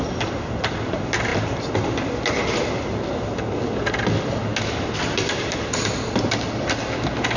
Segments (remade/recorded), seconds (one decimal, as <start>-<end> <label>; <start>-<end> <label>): 0.0-7.4 recorded